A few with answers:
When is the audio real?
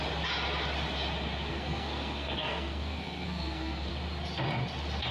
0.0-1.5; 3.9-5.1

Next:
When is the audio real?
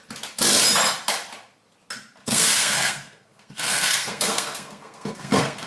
0.0-2.2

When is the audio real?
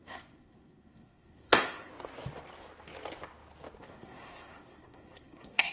1.9-3.8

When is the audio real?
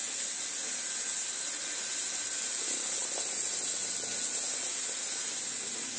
0.0-6.0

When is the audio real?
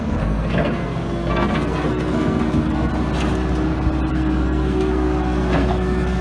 2.9-4.1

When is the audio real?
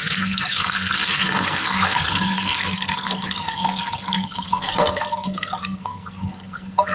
none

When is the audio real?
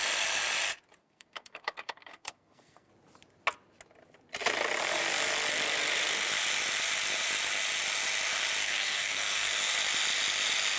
0.0-1.0; 2.9-8.6; 9.5-10.8